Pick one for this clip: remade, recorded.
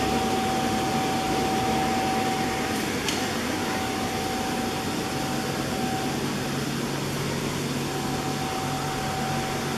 recorded